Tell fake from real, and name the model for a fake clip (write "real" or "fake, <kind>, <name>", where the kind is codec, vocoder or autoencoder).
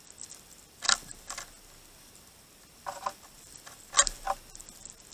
real